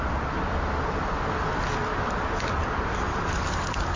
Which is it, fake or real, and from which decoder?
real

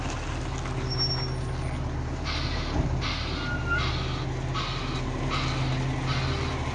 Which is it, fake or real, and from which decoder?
real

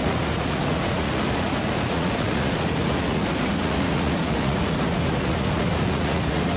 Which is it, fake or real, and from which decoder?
fake, vocoder, Vocos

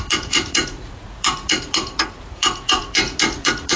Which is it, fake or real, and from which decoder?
fake, vocoder, Vocos